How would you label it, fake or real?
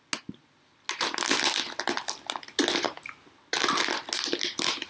real